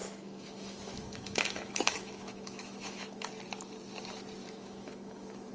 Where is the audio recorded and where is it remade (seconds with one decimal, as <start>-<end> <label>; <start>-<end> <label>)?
0.0-3.3 remade; 3.3-4.4 recorded; 4.4-5.5 remade